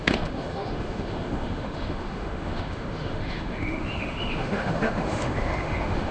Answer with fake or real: fake